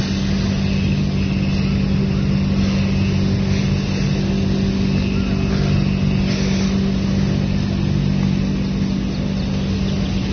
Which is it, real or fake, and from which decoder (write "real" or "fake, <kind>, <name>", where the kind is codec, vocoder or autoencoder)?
real